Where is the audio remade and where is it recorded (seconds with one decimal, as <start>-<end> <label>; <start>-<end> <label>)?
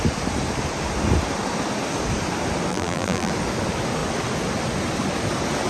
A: 0.0-2.7 recorded; 2.7-3.3 remade; 3.3-5.7 recorded